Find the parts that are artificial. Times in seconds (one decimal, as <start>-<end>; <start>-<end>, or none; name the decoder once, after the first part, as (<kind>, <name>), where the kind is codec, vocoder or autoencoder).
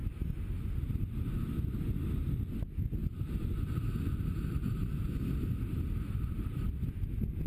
none